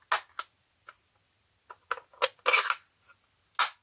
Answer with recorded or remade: recorded